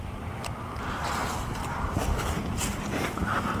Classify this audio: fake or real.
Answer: real